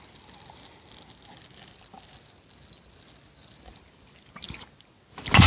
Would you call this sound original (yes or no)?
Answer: yes